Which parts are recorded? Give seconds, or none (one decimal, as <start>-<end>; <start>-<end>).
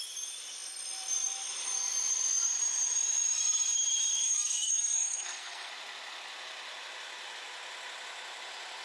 0.0-4.1; 5.7-8.8